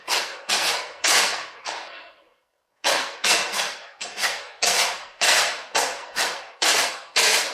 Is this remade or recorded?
remade